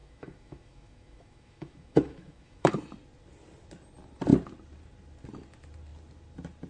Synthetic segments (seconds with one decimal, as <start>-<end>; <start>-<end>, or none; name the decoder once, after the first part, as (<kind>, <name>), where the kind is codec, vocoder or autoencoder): 0.0-2.7 (autoencoder, DAC-VAE)